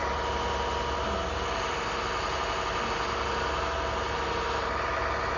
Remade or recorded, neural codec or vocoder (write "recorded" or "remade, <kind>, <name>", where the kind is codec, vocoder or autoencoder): recorded